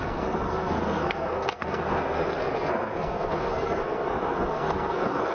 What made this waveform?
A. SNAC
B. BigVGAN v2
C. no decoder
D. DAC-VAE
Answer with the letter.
A